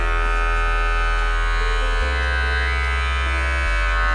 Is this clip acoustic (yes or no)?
yes